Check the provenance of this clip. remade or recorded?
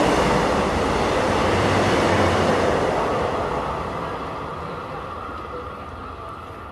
recorded